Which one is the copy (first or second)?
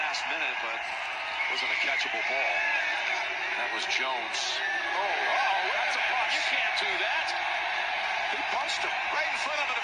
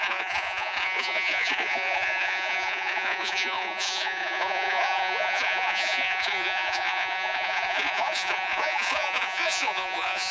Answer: second